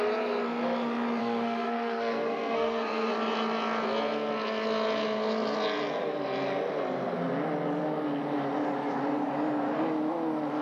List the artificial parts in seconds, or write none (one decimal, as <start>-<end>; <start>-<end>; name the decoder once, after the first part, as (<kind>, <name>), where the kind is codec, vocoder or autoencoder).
1.2-3.1 (codec, SNAC)